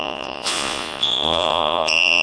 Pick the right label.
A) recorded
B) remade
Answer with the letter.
B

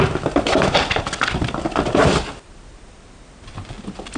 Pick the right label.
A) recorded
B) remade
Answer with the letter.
A